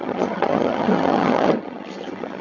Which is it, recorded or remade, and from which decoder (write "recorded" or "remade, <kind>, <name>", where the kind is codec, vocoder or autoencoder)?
remade, vocoder, HiFi-GAN